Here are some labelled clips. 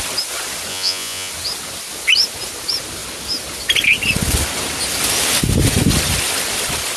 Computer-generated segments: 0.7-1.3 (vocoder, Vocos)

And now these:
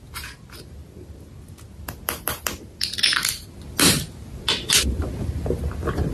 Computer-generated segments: none